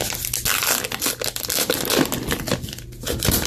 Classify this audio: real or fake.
real